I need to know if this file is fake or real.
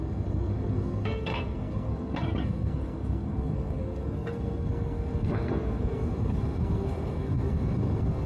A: fake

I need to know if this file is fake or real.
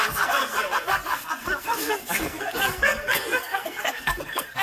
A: fake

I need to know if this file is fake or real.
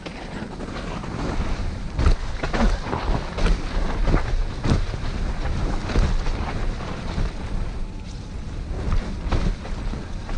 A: real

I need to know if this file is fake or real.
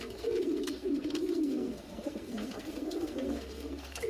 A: fake